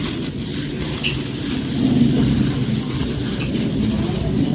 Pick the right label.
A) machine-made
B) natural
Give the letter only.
B